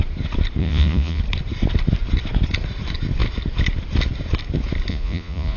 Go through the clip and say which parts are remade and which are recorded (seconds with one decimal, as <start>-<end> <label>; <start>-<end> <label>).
0.0-0.6 recorded; 0.6-1.2 remade; 1.2-4.9 recorded; 4.9-5.6 remade